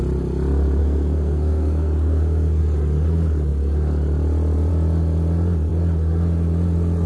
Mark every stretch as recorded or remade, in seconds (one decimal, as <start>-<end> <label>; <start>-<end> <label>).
0.0-0.8 recorded; 0.8-2.6 remade; 2.6-7.1 recorded